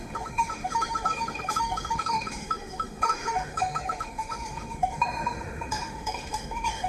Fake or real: fake